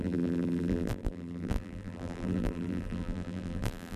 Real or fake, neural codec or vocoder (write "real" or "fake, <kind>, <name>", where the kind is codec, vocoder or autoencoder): fake, vocoder, BigVGAN v2